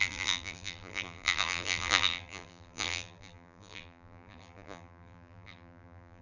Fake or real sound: fake